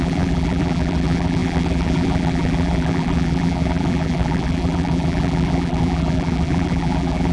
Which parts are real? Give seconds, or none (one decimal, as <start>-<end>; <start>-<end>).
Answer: none